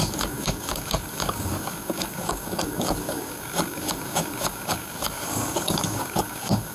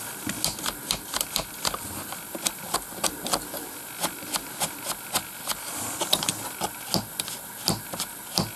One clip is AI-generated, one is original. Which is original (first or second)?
second